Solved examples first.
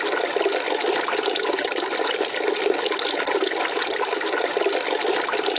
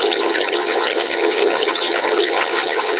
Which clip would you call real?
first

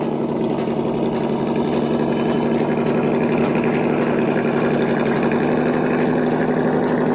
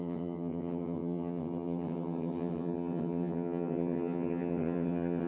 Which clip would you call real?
first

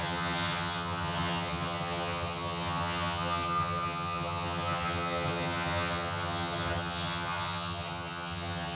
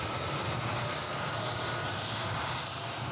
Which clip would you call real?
second